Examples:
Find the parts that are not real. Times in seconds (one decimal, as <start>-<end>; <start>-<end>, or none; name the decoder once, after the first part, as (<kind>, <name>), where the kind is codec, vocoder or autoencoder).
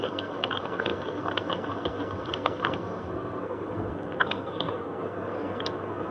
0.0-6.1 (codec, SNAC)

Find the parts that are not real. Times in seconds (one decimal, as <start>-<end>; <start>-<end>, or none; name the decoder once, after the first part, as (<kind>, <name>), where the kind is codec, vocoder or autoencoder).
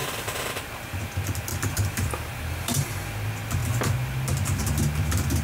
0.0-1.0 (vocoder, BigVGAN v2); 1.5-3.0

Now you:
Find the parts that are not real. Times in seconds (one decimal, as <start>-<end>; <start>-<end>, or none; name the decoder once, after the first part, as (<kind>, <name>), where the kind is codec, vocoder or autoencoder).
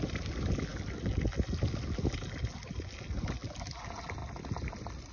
none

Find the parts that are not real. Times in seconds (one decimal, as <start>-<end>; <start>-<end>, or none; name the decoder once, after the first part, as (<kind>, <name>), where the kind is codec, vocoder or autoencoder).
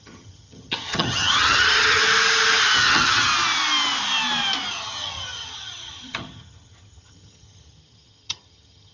0.0-2.0 (vocoder, HiFi-GAN); 2.8-3.3; 4.7-8.9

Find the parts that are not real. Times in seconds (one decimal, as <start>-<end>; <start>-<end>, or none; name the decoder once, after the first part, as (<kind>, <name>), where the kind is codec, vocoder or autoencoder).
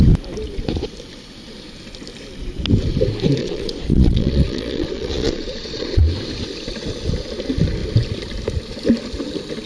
3.4-6.0 (vocoder, Vocos)